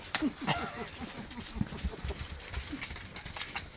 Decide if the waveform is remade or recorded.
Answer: recorded